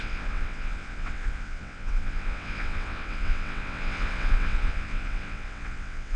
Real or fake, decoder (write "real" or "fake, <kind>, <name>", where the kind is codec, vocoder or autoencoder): fake, vocoder, WaveNeXt